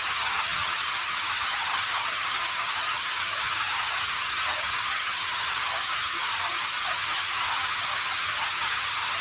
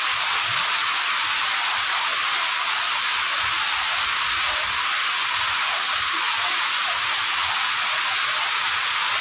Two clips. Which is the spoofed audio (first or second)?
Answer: first